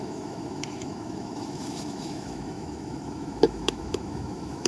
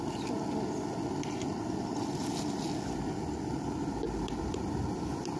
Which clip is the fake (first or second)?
first